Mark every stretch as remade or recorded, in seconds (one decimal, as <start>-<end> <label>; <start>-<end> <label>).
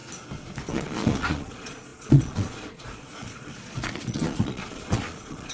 0.0-0.7 recorded; 0.7-5.5 remade